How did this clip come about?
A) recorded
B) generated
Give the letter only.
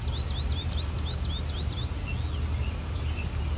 A